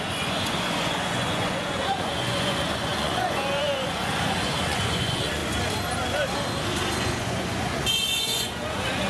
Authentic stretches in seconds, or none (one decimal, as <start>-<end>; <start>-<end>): 5.4-7.0